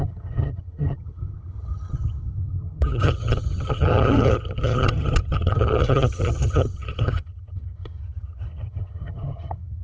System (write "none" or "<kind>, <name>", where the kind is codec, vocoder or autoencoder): vocoder, HiFi-GAN